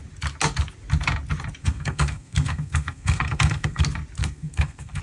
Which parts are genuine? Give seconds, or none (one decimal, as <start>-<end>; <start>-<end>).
0.0-1.6; 3.8-4.2